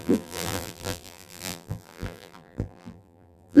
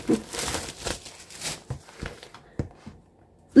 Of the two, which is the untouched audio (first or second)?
second